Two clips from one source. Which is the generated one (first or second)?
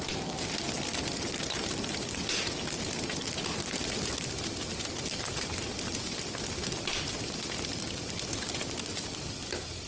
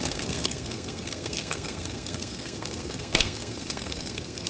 second